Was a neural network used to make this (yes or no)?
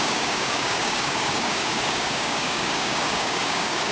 yes